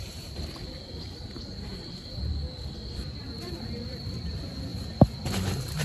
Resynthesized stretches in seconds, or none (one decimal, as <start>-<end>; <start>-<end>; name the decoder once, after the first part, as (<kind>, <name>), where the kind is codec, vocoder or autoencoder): 0.0-1.7 (vocoder, BigVGAN v2); 3.2-5.8